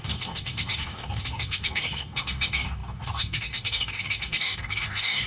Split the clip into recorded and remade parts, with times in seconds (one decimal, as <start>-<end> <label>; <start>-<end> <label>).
0.0-5.3 remade